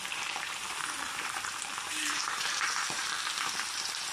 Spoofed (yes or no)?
yes